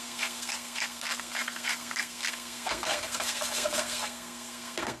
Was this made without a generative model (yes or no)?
no